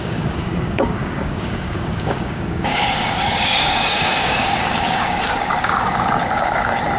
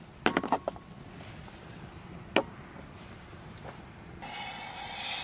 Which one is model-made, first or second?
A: first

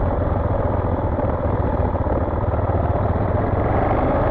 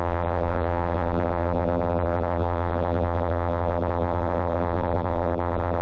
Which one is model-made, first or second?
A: second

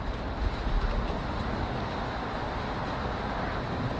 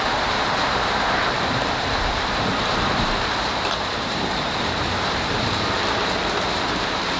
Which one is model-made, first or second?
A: second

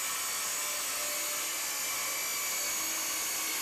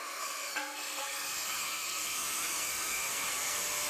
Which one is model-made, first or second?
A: second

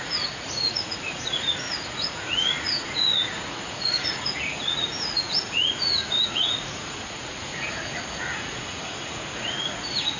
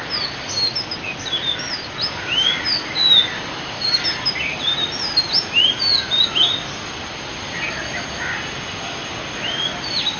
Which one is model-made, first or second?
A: first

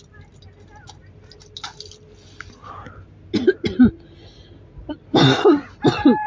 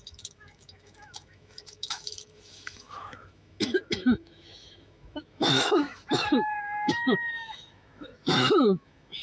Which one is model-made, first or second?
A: second